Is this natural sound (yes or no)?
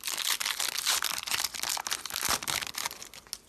yes